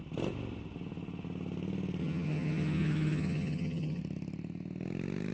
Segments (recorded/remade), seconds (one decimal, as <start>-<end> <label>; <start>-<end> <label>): 0.0-2.0 recorded; 2.0-4.0 remade; 4.0-5.3 recorded